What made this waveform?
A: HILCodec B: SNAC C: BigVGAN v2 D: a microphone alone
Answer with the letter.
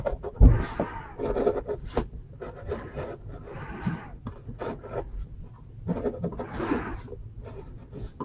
D